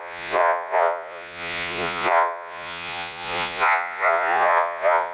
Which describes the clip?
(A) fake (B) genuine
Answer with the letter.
A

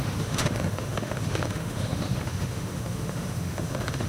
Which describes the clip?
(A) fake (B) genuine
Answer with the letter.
A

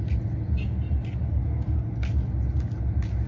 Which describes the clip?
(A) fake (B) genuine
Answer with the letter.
B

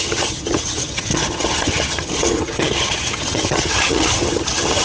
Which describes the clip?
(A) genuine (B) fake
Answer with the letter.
B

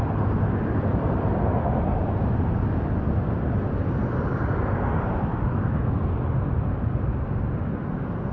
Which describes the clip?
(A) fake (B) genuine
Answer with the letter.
B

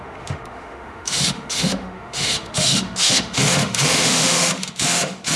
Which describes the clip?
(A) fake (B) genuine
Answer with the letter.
A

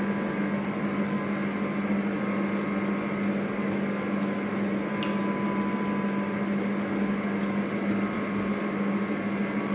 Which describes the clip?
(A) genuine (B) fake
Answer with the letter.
A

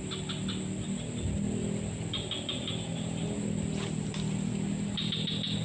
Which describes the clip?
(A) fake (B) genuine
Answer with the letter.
B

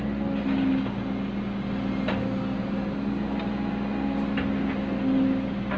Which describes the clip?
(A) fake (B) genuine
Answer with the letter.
B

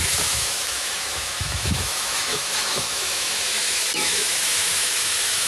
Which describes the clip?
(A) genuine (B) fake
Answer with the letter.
B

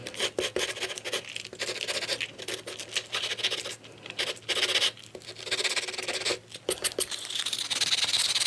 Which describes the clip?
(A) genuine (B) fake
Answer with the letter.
A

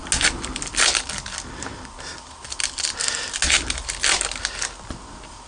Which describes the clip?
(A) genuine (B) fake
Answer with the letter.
A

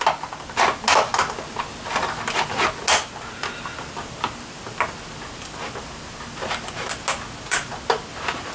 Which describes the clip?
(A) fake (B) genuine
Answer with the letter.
B